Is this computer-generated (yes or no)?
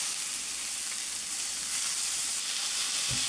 no